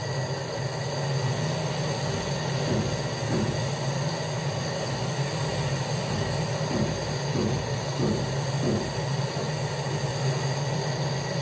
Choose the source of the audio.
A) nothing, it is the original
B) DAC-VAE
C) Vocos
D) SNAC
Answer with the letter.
A